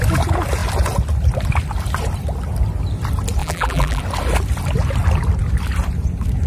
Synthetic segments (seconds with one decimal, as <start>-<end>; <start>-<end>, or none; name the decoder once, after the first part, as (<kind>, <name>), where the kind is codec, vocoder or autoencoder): 3.4-4.0 (vocoder, BigVGAN v2)